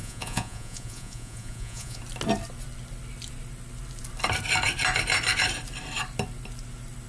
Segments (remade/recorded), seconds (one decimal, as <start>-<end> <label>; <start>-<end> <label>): 0.0-2.0 remade; 2.0-7.1 recorded